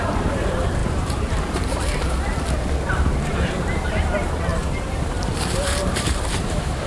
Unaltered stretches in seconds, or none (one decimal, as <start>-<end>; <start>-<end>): 2.3-3.3